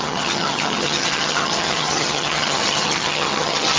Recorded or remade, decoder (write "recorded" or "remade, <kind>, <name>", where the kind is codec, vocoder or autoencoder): remade, vocoder, HiFi-GAN